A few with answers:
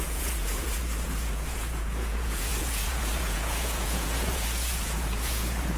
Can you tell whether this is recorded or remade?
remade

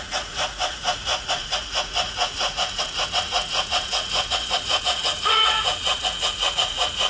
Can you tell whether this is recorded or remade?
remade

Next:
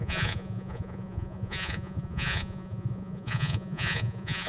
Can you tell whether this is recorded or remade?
remade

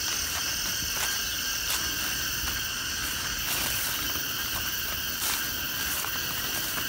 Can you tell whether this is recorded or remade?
recorded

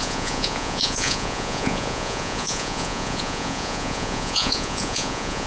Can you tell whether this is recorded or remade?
remade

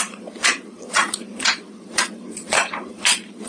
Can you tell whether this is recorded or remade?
remade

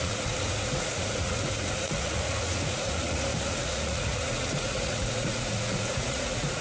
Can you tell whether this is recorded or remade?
remade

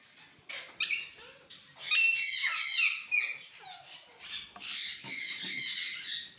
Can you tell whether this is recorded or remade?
recorded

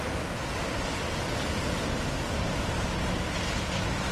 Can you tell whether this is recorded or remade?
recorded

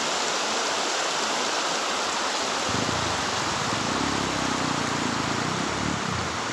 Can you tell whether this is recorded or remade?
recorded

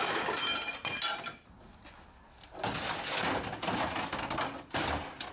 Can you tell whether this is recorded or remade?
recorded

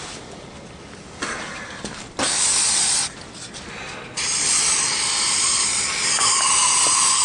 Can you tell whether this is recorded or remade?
recorded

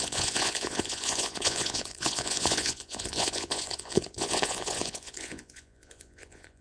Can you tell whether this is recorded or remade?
remade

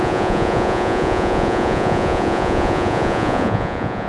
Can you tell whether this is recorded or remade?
remade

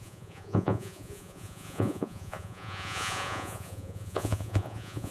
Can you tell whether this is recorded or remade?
remade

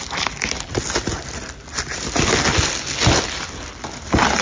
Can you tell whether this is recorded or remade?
recorded